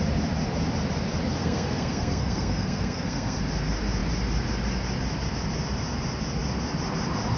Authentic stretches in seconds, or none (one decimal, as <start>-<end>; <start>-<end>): 0.0-1.4; 3.4-7.4